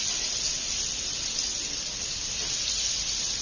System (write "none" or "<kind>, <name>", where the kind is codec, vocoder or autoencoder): none